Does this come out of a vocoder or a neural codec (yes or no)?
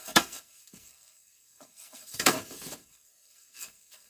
yes